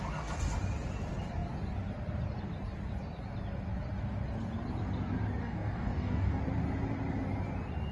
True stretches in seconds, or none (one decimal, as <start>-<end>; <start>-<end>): 0.0-5.4; 6.4-7.9